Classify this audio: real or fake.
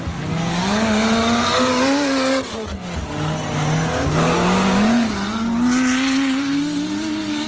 real